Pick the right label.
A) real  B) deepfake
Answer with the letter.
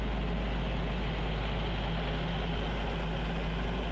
A